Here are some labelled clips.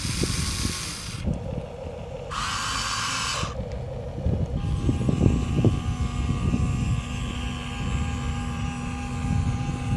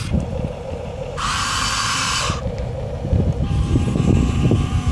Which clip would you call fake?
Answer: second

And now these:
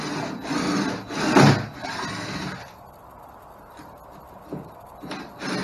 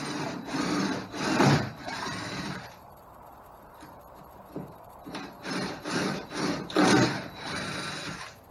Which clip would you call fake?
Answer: second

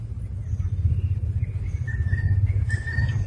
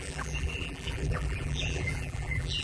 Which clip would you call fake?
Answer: second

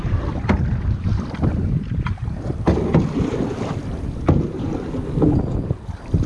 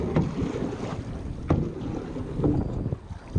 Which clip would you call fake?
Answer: first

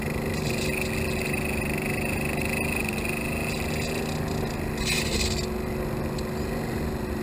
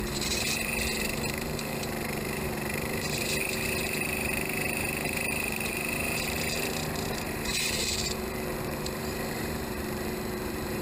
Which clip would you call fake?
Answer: second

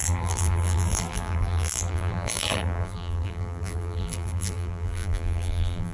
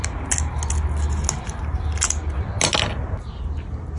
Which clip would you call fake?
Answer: first